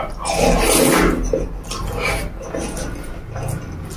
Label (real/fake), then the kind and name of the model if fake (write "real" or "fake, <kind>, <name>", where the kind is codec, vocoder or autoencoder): real